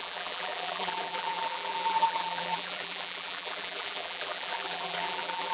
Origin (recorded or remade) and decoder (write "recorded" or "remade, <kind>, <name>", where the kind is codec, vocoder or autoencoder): remade, vocoder, BigVGAN v2